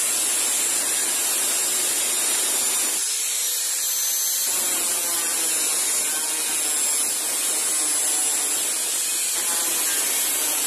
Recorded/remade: recorded